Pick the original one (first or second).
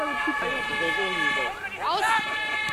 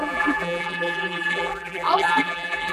first